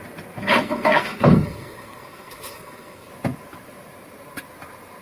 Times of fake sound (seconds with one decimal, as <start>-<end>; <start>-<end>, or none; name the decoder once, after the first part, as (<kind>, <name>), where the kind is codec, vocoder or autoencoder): 0.4-3.1 (codec, SNAC)